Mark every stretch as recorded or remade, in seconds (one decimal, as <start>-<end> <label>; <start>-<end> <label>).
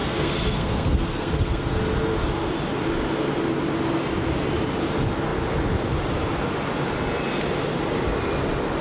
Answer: 0.0-1.8 remade; 1.8-8.8 recorded